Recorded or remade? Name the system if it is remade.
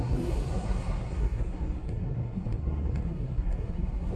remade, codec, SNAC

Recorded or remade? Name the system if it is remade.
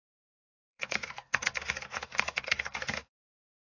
remade, codec, SNAC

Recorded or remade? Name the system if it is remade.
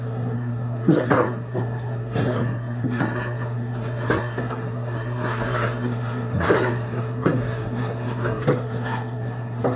remade, codec, SNAC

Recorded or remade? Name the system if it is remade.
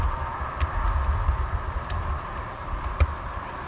recorded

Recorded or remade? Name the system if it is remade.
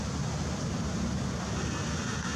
recorded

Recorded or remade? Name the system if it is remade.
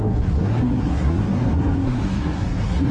remade, codec, SNAC